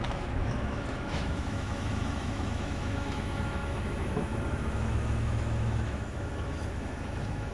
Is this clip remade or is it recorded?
remade